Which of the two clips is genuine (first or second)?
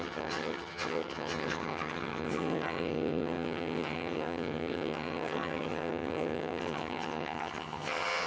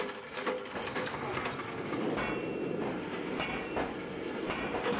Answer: second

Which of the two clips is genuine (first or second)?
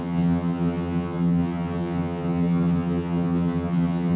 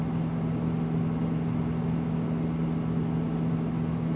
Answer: second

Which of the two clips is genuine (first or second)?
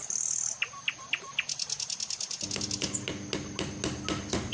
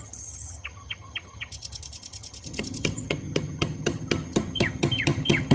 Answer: first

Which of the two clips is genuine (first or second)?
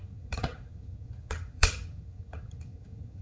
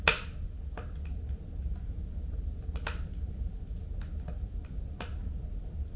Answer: second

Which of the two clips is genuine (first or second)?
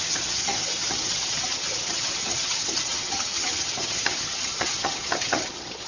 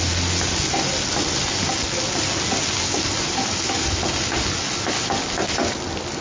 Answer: second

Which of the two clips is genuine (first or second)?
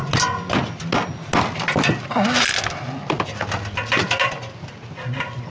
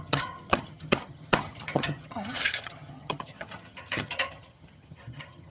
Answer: first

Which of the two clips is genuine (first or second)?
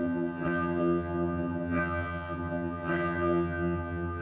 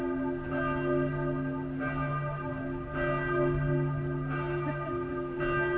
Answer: second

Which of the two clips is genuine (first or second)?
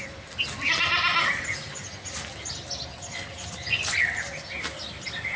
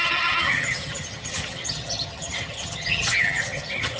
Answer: first